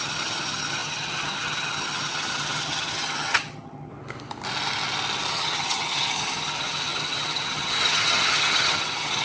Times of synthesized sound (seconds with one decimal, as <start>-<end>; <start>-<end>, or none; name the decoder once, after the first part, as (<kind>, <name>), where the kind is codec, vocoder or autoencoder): 0.0-3.9 (vocoder, HiFi-GAN); 5.3-9.2